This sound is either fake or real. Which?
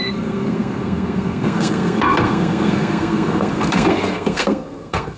fake